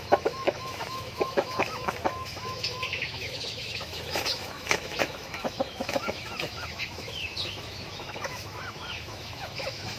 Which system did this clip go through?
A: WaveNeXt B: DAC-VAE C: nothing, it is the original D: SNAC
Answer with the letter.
B